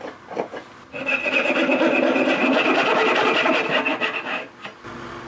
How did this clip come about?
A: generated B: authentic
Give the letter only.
B